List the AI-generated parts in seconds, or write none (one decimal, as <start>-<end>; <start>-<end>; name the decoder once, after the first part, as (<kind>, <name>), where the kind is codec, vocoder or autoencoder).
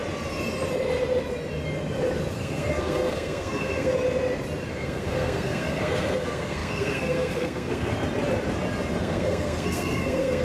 2.3-3.9 (codec, SNAC); 4.7-7.9; 9.0-10.4